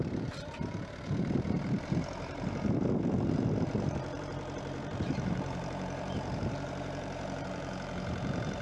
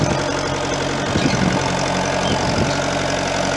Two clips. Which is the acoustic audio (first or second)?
second